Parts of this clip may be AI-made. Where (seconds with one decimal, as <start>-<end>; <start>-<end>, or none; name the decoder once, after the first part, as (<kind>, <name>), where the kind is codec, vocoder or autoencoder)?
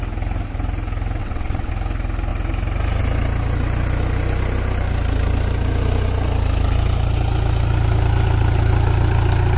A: 1.2-1.7 (vocoder, WaveNeXt)